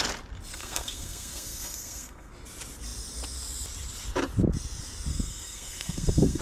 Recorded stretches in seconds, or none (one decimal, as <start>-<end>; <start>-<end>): 0.0-0.5; 2.3-5.1